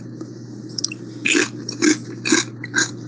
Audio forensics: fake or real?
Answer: real